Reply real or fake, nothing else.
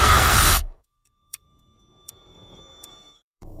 fake